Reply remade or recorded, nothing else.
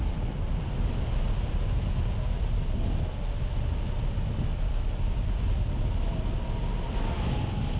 recorded